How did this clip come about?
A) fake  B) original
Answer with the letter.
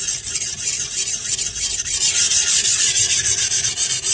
B